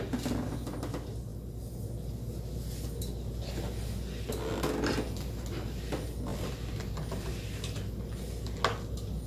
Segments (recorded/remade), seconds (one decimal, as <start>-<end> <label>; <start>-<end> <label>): 0.0-9.3 recorded